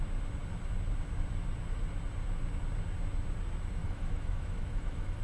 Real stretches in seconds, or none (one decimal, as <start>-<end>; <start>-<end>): 0.0-3.8